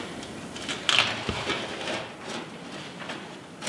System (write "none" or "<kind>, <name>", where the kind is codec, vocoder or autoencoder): none